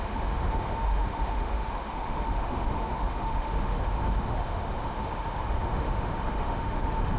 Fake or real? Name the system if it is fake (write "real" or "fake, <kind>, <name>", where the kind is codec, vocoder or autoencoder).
fake, autoencoder, DAC-VAE